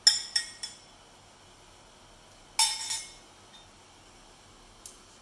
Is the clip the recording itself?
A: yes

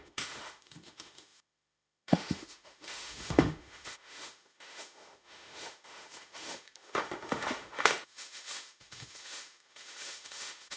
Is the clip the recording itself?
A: no